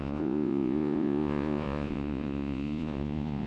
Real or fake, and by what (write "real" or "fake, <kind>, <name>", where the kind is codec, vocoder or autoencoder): fake, vocoder, Vocos